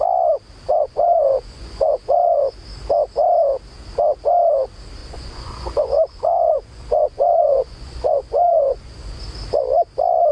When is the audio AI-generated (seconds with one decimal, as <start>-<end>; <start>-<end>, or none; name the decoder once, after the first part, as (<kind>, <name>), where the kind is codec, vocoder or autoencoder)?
0.8-2.4 (vocoder, Vocos); 5.0-9.2